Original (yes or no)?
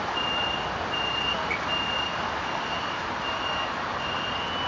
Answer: yes